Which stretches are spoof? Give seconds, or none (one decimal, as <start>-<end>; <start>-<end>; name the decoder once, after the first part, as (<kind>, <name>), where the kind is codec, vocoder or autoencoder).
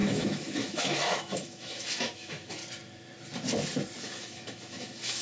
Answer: 0.0-2.6 (autoencoder, DAC-VAE); 4.0-5.2